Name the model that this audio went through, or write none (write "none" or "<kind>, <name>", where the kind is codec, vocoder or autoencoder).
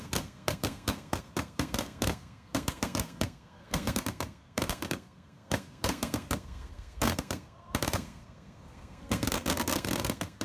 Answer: codec, SNAC